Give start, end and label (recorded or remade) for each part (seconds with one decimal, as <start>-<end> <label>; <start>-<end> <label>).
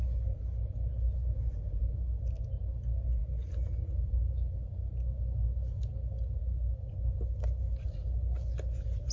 0.0-9.1 recorded